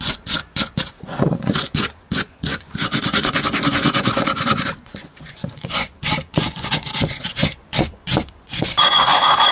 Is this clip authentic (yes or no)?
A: no